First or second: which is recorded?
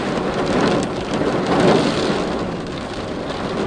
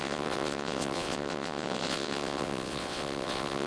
first